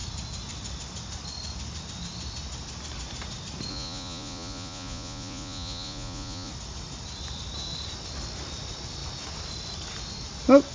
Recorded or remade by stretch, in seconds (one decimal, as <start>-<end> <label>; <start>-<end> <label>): 0.0-3.7 recorded; 3.7-6.5 remade; 6.5-10.7 recorded